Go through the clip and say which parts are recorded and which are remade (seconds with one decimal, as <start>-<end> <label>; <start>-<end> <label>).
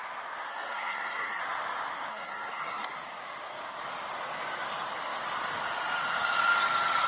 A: 0.0-0.5 recorded; 0.5-1.4 remade; 1.4-2.1 recorded; 2.1-2.9 remade; 2.9-7.1 recorded